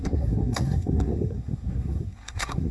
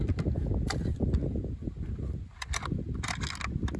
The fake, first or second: first